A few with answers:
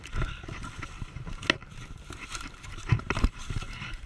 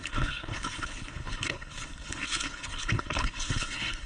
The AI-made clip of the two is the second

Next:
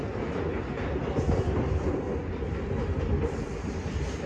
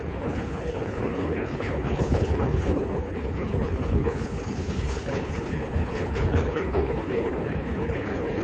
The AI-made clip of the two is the second